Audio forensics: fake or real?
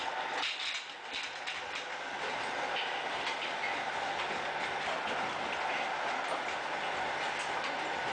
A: real